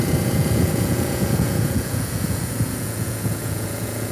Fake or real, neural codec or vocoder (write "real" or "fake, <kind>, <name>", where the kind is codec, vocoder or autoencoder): fake, vocoder, Vocos